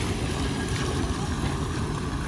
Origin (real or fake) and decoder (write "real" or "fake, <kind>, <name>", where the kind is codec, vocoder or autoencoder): real